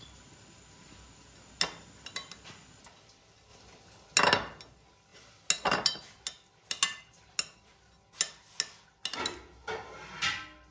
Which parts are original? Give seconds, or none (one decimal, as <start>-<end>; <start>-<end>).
0.0-10.7